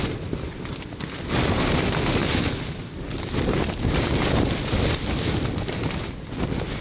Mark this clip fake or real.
real